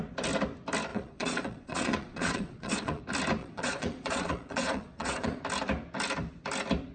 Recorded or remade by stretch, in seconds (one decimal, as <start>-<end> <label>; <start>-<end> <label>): 0.0-0.9 recorded; 0.9-3.0 remade; 3.0-3.4 recorded; 3.4-5.4 remade; 5.4-6.9 recorded